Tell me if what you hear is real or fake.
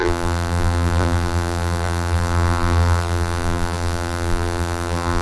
fake